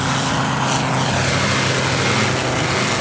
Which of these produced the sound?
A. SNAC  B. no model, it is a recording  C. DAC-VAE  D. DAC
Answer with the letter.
B